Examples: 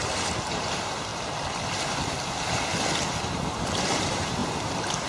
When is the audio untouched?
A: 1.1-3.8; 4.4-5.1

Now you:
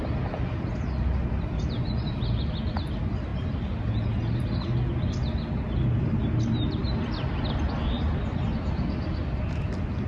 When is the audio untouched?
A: 0.0-10.1

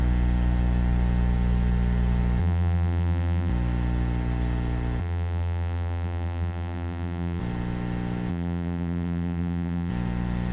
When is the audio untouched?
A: 0.0-2.4; 3.5-5.0; 7.4-8.3; 9.9-10.5

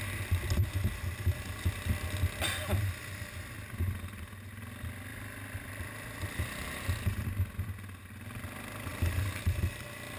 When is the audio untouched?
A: 0.0-5.1; 6.3-8.9

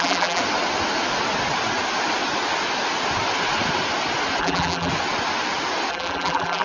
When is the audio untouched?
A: 0.4-4.4; 4.9-5.9